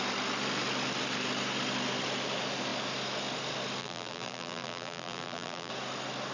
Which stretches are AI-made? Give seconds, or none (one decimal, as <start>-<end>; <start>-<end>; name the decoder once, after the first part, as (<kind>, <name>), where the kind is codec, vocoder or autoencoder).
3.8-5.7 (vocoder, BigVGAN v2)